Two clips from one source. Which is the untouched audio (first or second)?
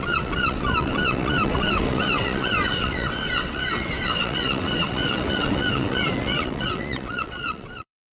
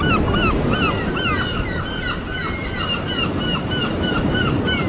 second